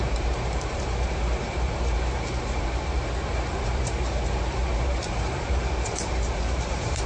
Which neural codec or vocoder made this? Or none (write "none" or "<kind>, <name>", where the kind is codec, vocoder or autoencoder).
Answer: vocoder, BigVGAN v2